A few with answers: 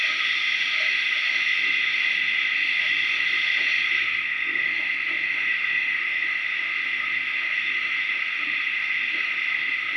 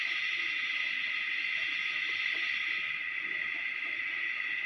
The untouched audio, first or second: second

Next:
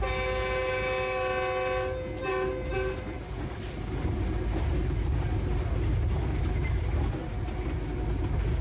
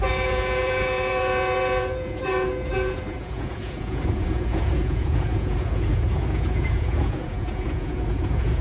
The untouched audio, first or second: first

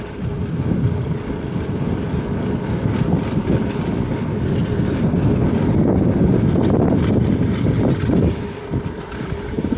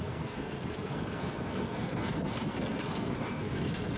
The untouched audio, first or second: first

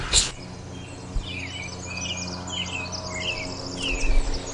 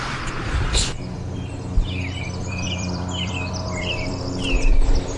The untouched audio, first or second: first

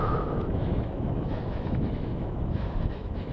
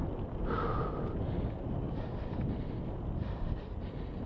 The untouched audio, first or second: second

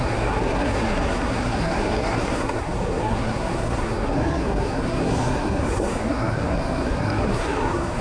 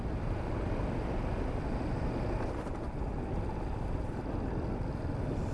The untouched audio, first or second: second